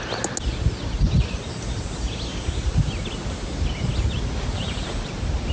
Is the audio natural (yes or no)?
yes